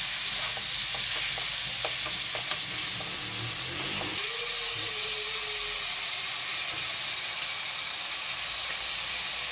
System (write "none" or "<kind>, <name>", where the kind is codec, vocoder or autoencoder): none